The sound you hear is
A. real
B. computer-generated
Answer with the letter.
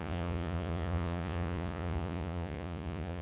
B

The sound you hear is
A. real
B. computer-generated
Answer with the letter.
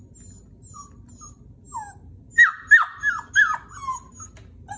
A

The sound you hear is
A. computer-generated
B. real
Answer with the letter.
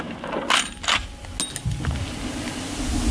B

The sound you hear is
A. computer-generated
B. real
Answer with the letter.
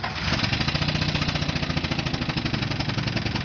B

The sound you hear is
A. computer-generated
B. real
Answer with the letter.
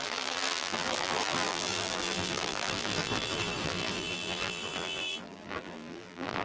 A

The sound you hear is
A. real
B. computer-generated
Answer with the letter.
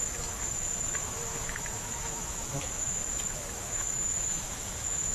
B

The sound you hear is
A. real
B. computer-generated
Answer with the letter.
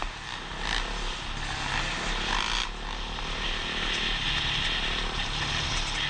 A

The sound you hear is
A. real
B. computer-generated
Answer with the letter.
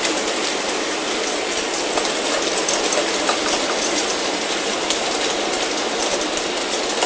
A